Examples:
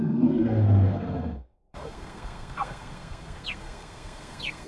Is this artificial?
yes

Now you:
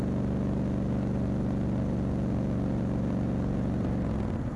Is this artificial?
no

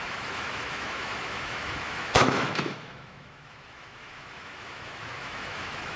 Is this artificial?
yes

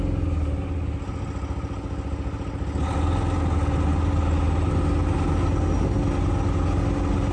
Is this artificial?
no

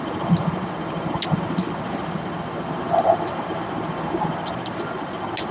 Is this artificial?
no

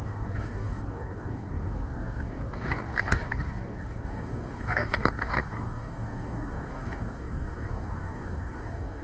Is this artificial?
yes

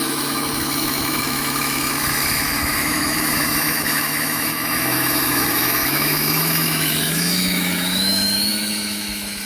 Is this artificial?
yes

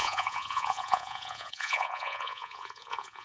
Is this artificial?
yes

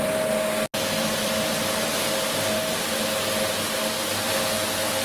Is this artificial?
no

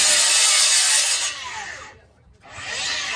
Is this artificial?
no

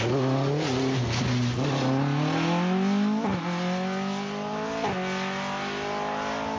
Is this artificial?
no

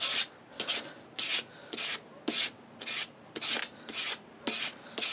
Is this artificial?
no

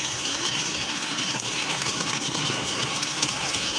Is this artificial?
yes